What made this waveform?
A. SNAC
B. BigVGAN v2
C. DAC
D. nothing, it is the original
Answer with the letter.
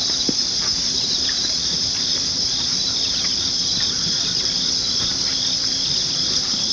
B